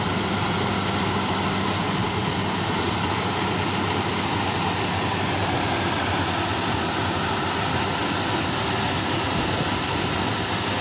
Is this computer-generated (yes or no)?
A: no